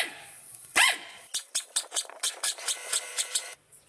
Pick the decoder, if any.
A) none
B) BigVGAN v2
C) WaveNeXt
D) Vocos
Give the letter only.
D